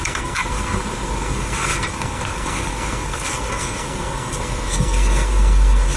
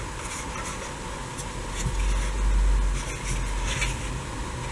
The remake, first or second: first